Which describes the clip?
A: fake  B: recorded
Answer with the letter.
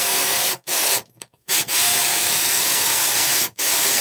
A